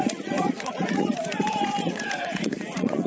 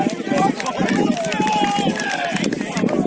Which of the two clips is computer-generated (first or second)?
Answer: first